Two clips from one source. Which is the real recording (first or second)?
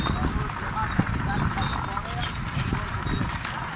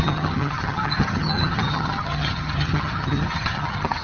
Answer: first